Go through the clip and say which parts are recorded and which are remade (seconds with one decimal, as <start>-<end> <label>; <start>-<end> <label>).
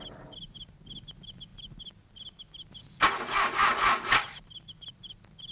0.0-5.5 recorded